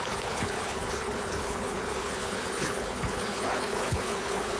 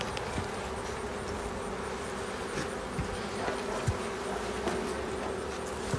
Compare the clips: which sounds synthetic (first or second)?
first